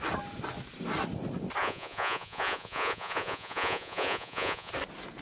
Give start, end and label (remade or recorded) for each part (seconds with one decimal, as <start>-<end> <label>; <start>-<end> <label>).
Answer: 0.0-1.6 recorded; 1.6-4.7 remade; 4.7-5.2 recorded